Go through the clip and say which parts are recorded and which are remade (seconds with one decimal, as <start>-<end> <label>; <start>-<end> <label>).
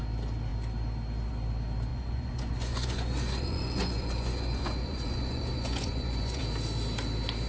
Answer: 0.0-1.9 recorded; 1.9-6.4 remade; 6.4-7.5 recorded